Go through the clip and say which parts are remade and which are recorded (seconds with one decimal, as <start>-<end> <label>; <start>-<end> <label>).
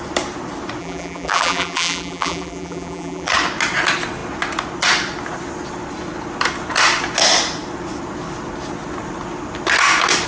0.0-0.8 recorded; 0.8-3.3 remade; 3.3-10.3 recorded